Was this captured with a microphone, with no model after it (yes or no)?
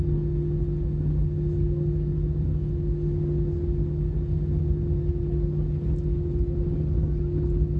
yes